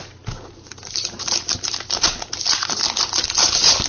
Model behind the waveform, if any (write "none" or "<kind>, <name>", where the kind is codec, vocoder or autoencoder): none